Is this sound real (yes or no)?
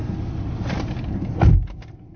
yes